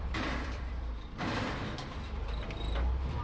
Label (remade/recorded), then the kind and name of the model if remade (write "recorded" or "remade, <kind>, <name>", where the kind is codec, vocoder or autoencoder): remade, vocoder, BigVGAN v2